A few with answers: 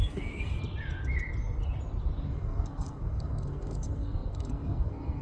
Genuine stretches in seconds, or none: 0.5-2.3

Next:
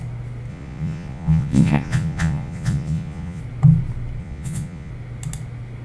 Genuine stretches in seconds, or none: 0.0-0.5; 3.4-4.2; 4.9-5.8

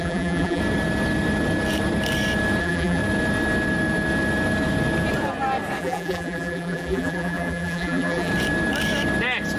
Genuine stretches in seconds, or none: 0.6-2.6; 3.0-5.8; 8.3-9.6

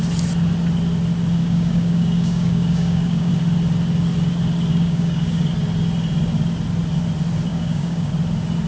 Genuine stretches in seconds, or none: 0.0-1.4; 3.3-4.7; 5.4-7.5; 8.1-8.7

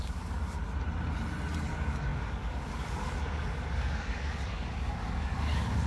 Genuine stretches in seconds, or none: 0.6-1.7

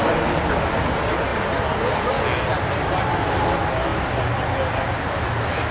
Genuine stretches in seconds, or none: 0.0-5.7